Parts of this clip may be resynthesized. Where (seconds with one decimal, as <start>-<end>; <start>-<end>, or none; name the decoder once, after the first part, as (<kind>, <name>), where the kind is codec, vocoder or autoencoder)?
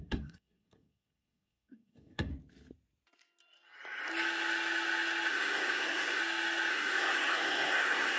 0.0-2.3 (codec, SNAC); 5.3-6.2; 6.7-8.2